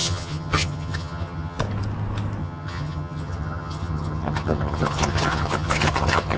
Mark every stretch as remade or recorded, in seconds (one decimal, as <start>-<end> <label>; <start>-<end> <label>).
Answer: 0.0-1.6 remade; 1.6-2.4 recorded; 2.4-6.4 remade